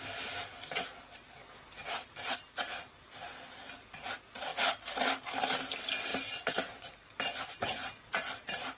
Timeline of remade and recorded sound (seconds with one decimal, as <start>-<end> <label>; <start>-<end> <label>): 0.0-1.4 recorded; 1.4-1.9 remade; 1.9-4.5 recorded; 4.5-5.2 remade; 5.2-6.1 recorded; 6.1-8.8 remade